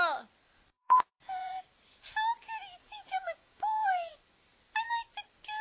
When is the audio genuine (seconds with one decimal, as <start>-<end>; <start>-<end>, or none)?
0.0-0.7; 1.6-2.8; 4.1-5.6